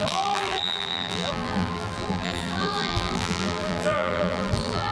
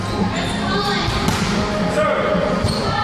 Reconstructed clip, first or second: first